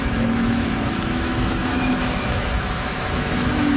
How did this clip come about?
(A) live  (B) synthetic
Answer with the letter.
B